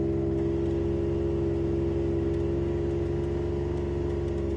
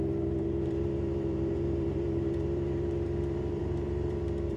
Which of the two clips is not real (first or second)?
second